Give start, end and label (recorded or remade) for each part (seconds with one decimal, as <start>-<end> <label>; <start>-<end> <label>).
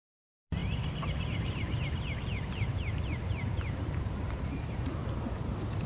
0.0-5.0 remade; 5.0-5.9 recorded